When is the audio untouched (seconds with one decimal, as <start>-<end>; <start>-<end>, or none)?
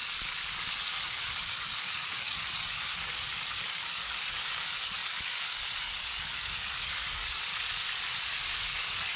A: 0.0-0.8; 7.5-8.3